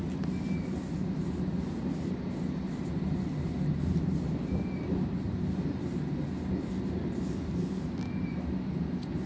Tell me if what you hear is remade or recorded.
recorded